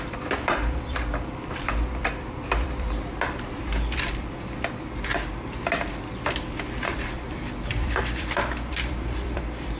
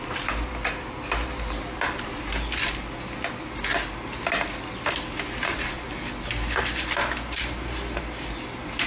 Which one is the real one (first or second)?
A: second